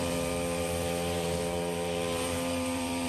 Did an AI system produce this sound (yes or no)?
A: yes